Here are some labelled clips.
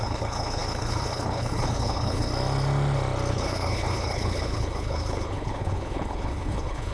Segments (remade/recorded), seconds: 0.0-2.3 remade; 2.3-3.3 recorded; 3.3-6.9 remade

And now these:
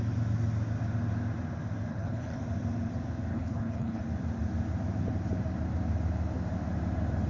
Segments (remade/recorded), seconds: 0.0-1.9 recorded; 1.9-2.4 remade; 2.4-3.3 recorded; 3.3-4.0 remade; 4.0-7.3 recorded

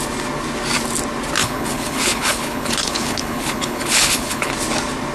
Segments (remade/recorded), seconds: 0.0-1.4 recorded; 1.4-4.5 remade; 4.5-5.1 recorded

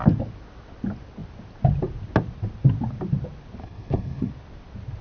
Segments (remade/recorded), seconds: 0.0-3.6 recorded; 3.6-4.3 remade; 4.3-5.0 recorded

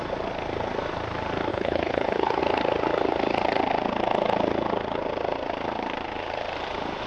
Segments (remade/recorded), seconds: 0.0-1.5 recorded; 1.5-2.4 remade; 2.4-7.1 recorded

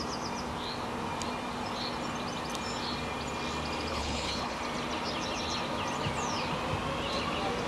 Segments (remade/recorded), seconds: 0.0-3.9 recorded; 3.9-4.6 remade; 4.6-7.7 recorded